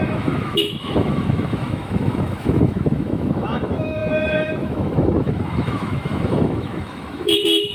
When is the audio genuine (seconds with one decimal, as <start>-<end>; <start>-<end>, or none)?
none